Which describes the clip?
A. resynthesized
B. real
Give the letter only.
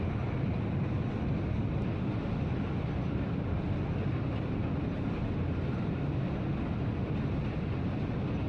B